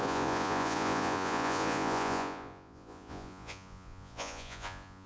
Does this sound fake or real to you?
fake